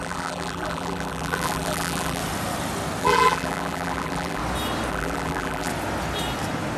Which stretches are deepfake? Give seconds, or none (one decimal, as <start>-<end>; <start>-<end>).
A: 0.0-2.2; 3.0-4.4; 4.9-5.7